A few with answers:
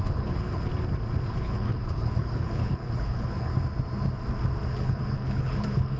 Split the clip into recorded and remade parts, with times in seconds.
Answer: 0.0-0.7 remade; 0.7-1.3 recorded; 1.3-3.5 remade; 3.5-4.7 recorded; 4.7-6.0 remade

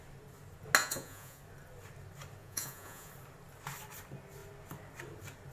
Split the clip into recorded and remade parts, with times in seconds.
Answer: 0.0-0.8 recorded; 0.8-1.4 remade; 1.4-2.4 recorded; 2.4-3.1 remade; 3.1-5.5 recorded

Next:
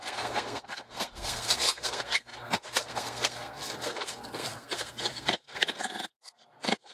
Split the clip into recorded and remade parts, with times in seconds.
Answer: 0.0-6.9 remade